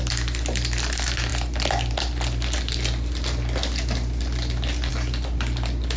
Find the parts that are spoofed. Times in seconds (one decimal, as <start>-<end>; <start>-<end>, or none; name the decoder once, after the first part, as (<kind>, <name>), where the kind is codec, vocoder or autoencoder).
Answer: none